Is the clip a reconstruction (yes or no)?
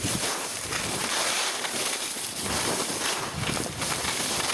no